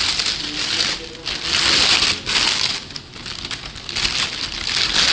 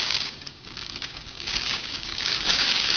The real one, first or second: first